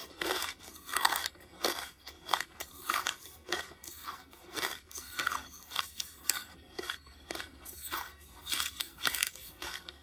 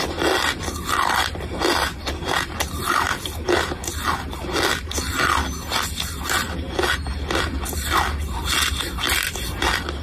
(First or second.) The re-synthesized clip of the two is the first